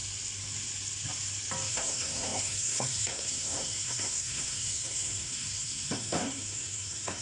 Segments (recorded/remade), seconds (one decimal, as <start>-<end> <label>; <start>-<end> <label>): 0.0-1.7 recorded; 1.7-7.2 remade